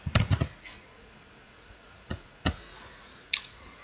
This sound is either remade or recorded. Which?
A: remade